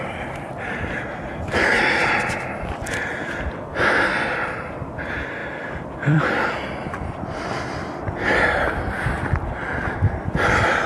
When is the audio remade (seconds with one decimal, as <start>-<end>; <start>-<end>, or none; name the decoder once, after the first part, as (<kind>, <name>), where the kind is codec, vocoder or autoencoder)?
5.4-6.2 (vocoder, BigVGAN v2)